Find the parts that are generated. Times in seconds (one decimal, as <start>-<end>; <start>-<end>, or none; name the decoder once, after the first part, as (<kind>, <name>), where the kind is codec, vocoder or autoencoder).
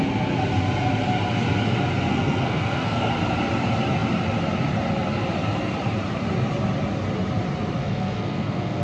2.1-3.1 (codec, SNAC); 7.8-8.8